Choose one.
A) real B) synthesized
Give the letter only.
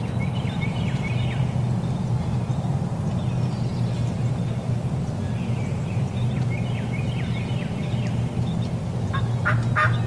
A